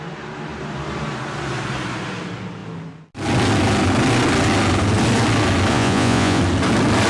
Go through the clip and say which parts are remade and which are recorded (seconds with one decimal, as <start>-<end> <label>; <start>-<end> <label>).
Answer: 0.0-5.7 recorded; 5.7-6.4 remade; 6.4-7.1 recorded

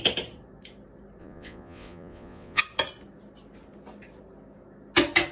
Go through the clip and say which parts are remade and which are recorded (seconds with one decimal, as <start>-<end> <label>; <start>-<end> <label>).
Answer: 0.0-1.2 recorded; 1.2-2.6 remade; 2.6-5.3 recorded

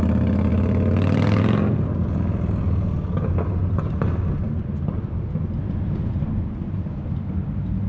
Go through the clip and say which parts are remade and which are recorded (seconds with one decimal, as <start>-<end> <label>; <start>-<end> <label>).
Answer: 0.0-7.9 recorded

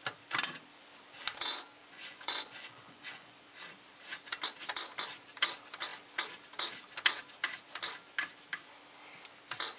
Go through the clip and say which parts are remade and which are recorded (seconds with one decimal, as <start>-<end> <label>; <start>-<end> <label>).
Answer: 0.0-1.8 recorded; 1.8-3.5 remade; 3.5-9.8 recorded

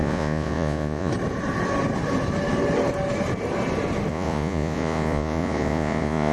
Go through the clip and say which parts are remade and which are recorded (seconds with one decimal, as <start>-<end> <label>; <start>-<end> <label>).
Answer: 0.0-1.1 remade; 1.1-4.1 recorded; 4.1-6.3 remade

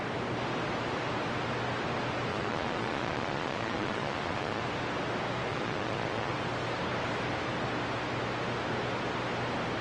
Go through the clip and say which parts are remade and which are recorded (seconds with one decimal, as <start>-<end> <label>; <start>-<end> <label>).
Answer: 0.0-2.3 recorded; 2.3-4.6 remade; 4.6-5.5 recorded; 5.5-6.3 remade; 6.3-9.8 recorded

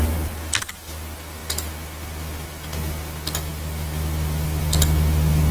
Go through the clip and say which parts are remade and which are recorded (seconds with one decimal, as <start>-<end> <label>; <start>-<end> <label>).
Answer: 0.0-5.5 recorded